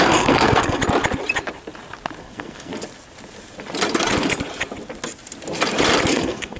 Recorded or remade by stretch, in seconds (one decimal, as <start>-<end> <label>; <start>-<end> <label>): 0.0-0.8 remade; 0.8-2.2 recorded; 2.2-2.7 remade; 2.7-6.1 recorded; 6.1-6.6 remade